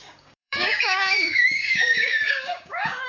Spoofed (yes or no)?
yes